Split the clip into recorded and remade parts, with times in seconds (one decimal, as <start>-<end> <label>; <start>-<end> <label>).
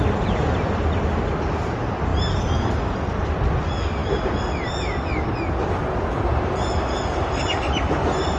0.0-8.4 recorded